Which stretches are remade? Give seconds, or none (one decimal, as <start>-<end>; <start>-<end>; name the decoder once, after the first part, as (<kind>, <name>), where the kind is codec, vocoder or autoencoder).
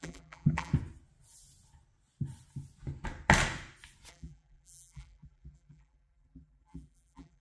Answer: 0.0-0.7 (vocoder, BigVGAN v2); 4.1-7.4